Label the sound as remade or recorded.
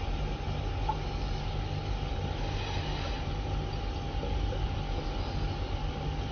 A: recorded